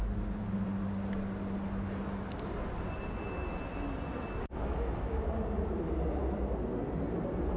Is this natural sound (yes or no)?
yes